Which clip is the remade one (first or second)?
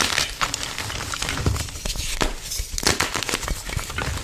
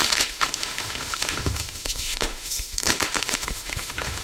second